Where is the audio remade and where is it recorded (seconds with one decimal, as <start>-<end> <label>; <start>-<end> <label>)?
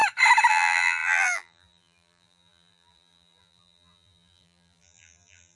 0.0-0.5 recorded; 0.5-5.6 remade